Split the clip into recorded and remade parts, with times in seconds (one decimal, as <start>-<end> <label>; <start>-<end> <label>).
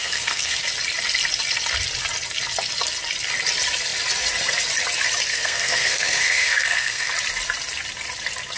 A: 0.0-0.6 remade; 0.6-5.3 recorded; 5.3-7.1 remade; 7.1-8.6 recorded